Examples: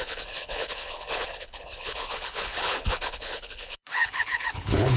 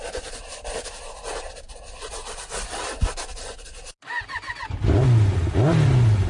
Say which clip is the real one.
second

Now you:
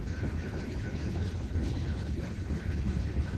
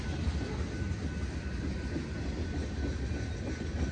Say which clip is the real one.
second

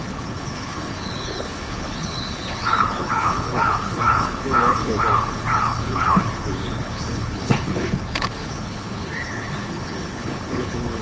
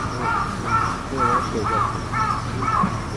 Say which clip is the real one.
second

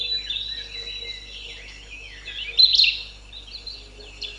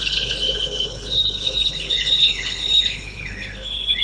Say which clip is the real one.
first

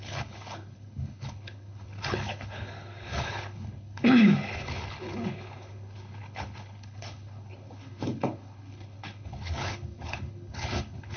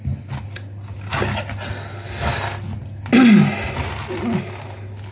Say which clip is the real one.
second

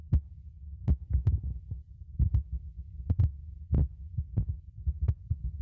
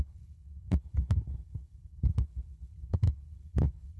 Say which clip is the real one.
first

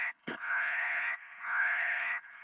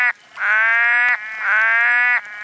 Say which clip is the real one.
second